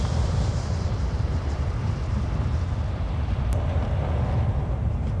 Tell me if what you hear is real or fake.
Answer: fake